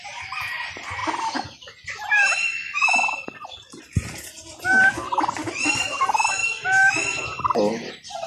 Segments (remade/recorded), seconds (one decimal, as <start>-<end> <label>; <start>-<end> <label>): 0.0-8.3 recorded

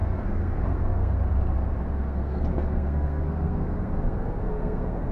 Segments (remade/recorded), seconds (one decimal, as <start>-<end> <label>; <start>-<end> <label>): 0.0-1.2 remade; 1.2-1.8 recorded; 1.8-5.1 remade

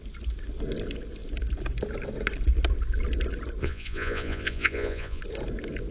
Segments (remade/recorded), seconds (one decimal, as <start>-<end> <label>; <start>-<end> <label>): 0.0-3.6 recorded; 3.6-5.2 remade; 5.2-5.9 recorded

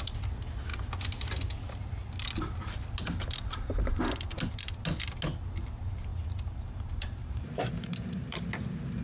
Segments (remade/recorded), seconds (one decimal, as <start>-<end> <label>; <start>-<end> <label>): 0.0-6.1 recorded; 6.1-8.5 remade; 8.5-9.0 recorded

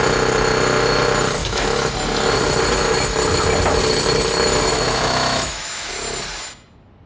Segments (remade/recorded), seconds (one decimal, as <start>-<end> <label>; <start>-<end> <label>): 0.0-1.4 recorded; 1.4-1.9 remade; 1.9-4.7 recorded; 4.7-5.9 remade; 5.9-7.1 recorded

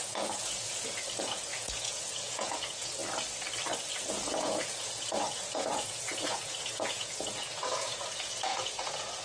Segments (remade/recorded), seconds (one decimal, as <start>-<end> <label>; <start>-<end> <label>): 0.0-3.0 remade; 3.0-4.1 recorded; 4.1-9.2 remade

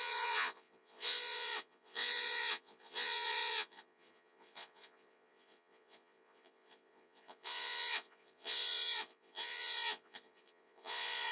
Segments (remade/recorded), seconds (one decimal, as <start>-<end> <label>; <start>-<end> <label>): 0.0-11.3 remade

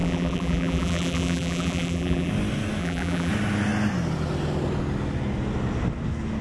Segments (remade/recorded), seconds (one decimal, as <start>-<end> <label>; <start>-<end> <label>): 0.0-2.3 remade; 2.3-2.8 recorded; 2.8-3.3 remade; 3.3-6.4 recorded